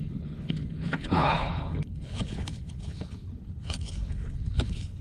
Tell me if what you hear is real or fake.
fake